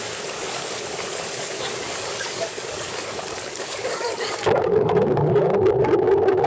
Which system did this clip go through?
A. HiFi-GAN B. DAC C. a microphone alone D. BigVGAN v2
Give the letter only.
B